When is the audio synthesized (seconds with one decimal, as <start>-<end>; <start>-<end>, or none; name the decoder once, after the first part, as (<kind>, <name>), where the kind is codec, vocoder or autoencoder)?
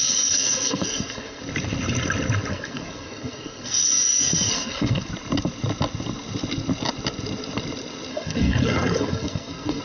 0.0-1.4 (codec, SNAC); 2.5-5.1; 8.1-9.8